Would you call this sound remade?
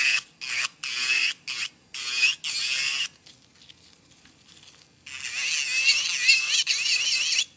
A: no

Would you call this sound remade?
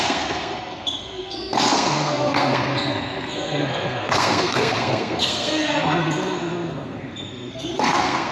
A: yes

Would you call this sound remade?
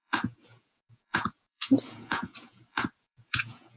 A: yes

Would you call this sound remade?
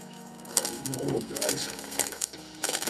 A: yes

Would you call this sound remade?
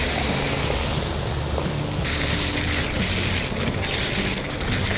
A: no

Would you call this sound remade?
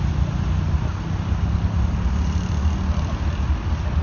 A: no